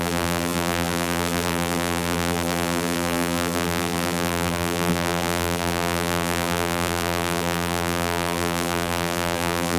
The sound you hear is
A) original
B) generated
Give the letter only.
B